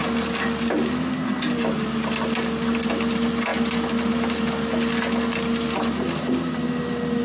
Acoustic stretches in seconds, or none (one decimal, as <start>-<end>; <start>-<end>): 0.0-7.2